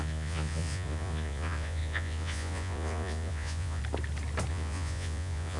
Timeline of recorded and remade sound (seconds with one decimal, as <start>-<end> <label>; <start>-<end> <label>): 0.0-3.8 remade; 3.8-4.5 recorded; 4.5-5.6 remade